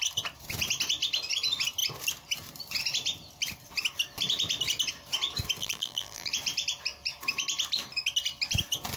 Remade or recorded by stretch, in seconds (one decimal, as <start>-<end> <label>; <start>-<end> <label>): 0.0-5.6 recorded; 5.6-6.3 remade; 6.3-9.0 recorded